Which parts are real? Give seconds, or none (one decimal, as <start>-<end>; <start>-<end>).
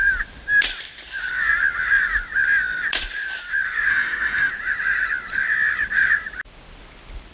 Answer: 0.0-3.9; 4.5-7.3